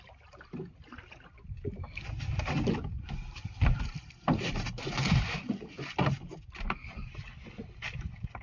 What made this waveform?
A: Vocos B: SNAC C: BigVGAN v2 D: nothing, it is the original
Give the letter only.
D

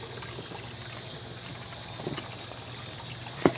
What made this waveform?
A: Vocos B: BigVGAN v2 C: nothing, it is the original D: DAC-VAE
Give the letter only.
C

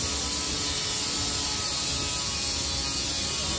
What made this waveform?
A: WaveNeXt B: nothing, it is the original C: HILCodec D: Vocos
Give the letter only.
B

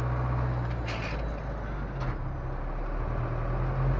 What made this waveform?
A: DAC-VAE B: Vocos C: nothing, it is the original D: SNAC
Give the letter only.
C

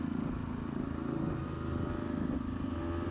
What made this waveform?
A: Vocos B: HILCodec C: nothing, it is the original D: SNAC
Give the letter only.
C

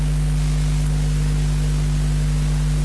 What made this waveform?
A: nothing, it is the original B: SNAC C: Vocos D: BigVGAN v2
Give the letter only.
A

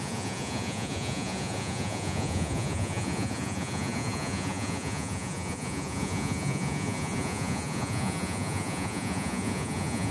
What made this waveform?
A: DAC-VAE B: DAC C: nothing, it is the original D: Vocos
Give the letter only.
D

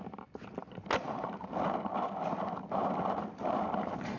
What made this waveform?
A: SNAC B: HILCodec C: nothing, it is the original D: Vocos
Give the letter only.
C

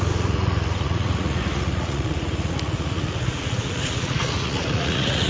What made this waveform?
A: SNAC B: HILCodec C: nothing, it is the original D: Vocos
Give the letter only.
D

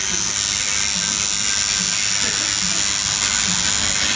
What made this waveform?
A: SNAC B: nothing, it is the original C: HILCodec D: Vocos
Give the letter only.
B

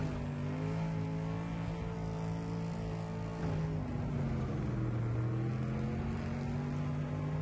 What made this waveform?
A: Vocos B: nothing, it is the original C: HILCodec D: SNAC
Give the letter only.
B